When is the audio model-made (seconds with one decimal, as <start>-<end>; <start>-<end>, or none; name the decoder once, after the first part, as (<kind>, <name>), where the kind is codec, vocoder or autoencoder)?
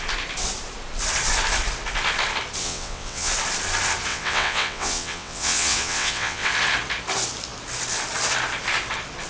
2.6-3.3 (vocoder, WaveNeXt); 4.1-6.5